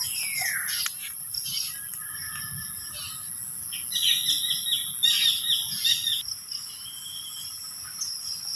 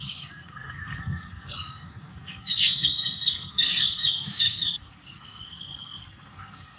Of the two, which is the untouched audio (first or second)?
first